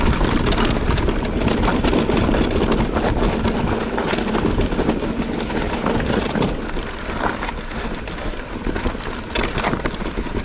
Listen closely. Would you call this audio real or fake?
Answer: real